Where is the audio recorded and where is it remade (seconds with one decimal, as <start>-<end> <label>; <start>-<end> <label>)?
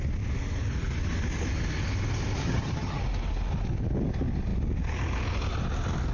0.0-2.4 recorded; 2.4-3.0 remade; 3.0-6.1 recorded